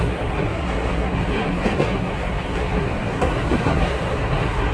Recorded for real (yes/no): no